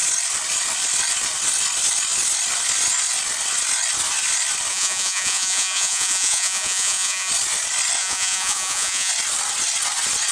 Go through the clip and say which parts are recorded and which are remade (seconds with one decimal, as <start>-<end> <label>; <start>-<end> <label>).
0.0-4.7 recorded; 4.7-7.3 remade; 7.3-8.0 recorded; 8.0-9.1 remade; 9.1-10.3 recorded